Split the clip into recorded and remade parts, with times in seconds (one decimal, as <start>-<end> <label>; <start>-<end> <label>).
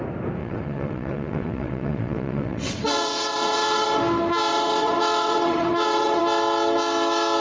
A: 0.0-0.4 recorded; 0.4-4.0 remade; 4.0-4.5 recorded; 4.5-6.2 remade; 6.2-7.4 recorded